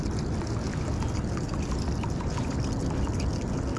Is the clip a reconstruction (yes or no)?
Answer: no